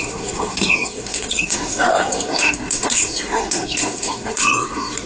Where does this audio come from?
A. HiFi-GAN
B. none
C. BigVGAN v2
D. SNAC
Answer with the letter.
D